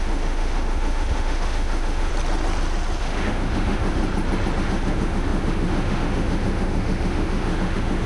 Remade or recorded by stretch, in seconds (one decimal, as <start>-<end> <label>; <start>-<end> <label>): 0.0-2.1 remade; 2.1-3.0 recorded; 3.0-4.0 remade; 4.0-4.6 recorded; 4.6-8.1 remade